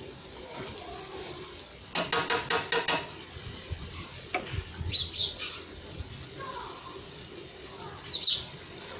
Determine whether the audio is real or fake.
real